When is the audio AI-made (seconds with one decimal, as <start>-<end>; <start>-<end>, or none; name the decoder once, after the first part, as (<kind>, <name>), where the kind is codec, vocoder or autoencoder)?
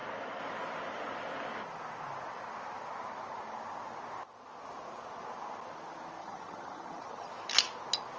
6.2-7.3 (vocoder, HiFi-GAN)